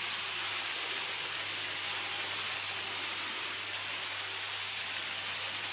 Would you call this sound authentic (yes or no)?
yes